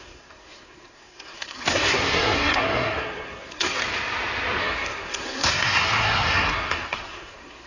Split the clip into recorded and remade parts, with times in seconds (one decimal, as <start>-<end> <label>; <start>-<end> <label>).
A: 0.0-3.8 remade; 3.8-4.6 recorded; 4.6-7.7 remade

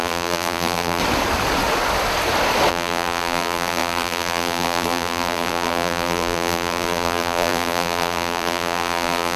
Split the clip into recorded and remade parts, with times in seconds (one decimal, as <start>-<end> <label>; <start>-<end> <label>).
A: 0.0-1.0 remade; 1.0-2.7 recorded; 2.7-9.4 remade

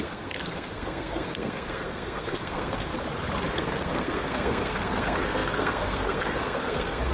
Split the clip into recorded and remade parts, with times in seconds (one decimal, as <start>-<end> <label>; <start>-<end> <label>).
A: 0.0-2.9 remade; 2.9-3.5 recorded; 3.5-7.1 remade